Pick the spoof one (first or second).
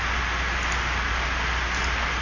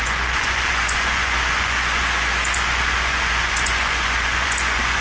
second